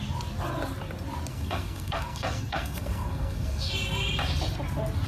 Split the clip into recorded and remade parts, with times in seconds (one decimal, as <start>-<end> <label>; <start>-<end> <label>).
0.0-1.3 recorded; 1.3-3.7 remade; 3.7-5.1 recorded